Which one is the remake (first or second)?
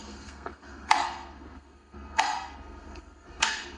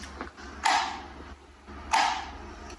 first